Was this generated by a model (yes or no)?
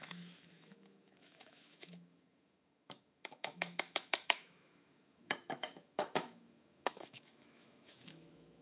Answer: yes